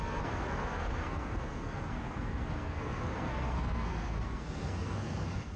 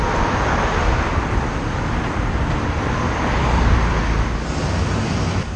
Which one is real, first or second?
second